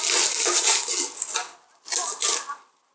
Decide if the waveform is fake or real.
real